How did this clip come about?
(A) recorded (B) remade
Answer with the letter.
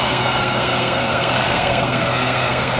B